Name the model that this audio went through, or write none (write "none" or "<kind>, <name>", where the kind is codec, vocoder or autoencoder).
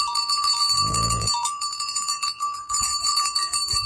vocoder, BigVGAN v2